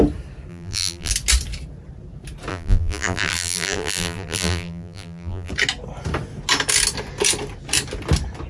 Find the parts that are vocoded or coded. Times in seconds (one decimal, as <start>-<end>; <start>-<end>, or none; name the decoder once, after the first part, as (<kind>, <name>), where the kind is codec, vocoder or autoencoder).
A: 0.5-1.1 (vocoder, BigVGAN v2); 2.5-5.5